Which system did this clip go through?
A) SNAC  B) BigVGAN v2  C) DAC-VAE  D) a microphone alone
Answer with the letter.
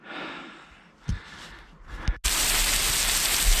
D